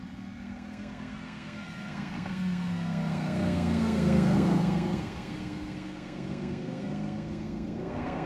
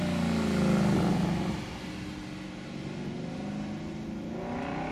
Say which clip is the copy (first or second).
first